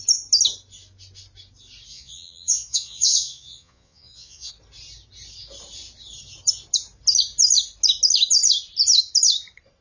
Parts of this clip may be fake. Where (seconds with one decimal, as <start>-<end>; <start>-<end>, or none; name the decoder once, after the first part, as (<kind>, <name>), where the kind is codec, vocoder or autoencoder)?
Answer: 1.9-4.5 (vocoder, Vocos)